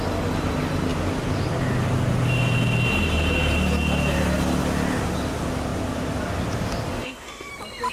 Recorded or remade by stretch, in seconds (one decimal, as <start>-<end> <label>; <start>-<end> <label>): 0.0-6.9 recorded; 6.9-7.5 remade; 7.5-7.9 recorded